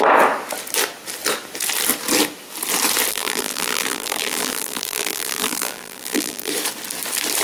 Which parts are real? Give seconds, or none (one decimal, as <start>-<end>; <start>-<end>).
0.0-3.1; 6.5-7.4